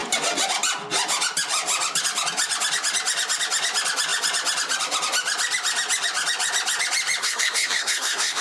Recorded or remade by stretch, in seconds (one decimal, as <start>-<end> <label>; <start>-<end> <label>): 0.0-7.2 recorded; 7.2-8.4 remade